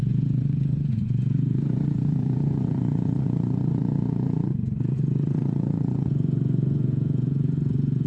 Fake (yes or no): yes